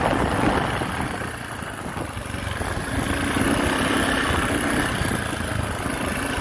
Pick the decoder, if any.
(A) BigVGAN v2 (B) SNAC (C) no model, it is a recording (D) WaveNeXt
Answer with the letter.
C